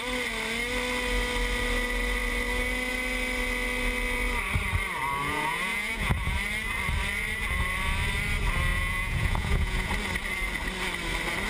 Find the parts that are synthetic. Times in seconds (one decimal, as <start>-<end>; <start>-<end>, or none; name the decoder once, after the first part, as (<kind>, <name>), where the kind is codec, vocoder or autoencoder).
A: 5.2-6.4 (vocoder, Vocos); 8.7-9.9